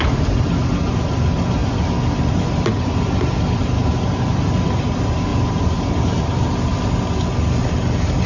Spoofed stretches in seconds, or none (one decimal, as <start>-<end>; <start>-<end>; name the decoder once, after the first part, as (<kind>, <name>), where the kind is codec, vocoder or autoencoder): none